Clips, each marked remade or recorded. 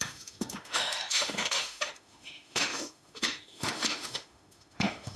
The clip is remade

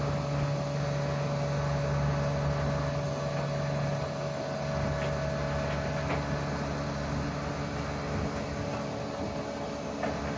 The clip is recorded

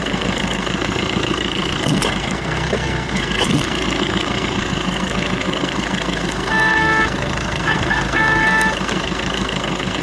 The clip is remade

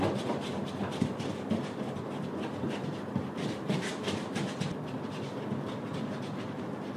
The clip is recorded